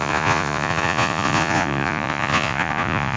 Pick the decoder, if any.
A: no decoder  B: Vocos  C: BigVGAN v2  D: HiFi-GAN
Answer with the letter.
B